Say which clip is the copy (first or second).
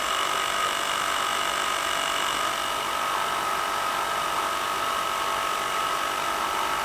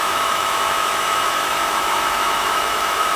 second